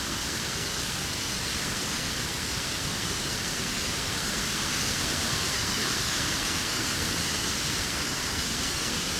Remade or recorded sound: remade